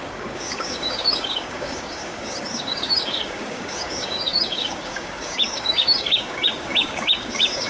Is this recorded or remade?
remade